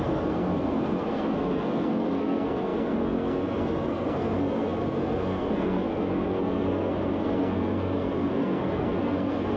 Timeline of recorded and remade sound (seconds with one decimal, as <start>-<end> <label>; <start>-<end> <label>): 0.0-9.6 remade